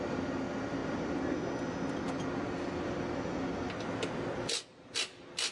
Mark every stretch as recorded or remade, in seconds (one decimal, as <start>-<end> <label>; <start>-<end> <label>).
0.0-5.5 recorded